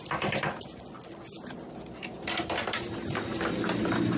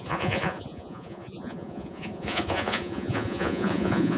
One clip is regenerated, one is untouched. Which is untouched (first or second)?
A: first